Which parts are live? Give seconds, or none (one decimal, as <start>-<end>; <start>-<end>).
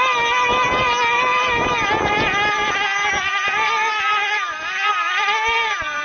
0.0-6.0